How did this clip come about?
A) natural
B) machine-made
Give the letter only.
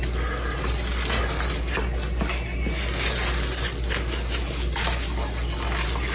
A